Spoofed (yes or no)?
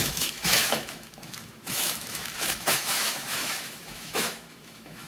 yes